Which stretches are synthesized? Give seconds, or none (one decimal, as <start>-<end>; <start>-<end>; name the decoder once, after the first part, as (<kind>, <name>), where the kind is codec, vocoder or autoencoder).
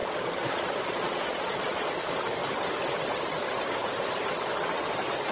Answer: 0.0-1.9 (vocoder, Vocos)